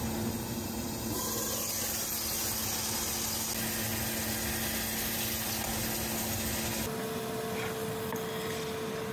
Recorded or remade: recorded